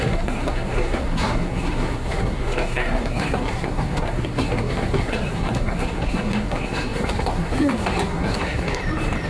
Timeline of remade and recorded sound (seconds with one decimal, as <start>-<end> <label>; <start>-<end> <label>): 0.0-8.8 remade; 8.8-9.3 recorded

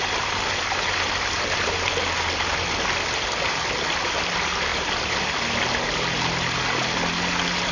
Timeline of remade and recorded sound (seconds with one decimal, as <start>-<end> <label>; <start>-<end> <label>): 0.0-7.7 recorded